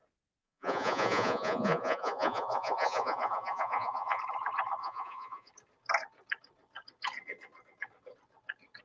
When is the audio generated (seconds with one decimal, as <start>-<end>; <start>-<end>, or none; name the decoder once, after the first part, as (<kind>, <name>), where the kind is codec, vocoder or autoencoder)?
0.4-4.2 (vocoder, Vocos); 4.8-5.5